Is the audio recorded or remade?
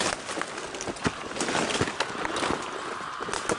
recorded